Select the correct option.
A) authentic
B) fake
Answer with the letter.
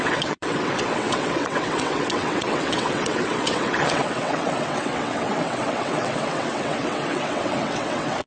B